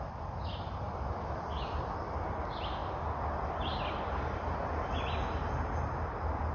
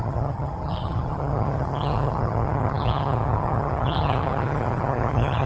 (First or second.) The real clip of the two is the first